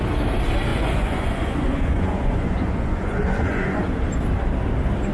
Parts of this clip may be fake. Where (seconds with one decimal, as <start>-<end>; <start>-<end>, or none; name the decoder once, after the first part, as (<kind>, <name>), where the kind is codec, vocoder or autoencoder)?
0.7-3.8 (vocoder, Vocos)